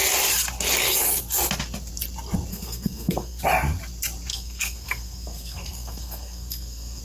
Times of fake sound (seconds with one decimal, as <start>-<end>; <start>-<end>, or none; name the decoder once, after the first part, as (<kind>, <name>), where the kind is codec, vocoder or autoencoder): 2.5-3.4 (codec, SNAC); 4.3-7.0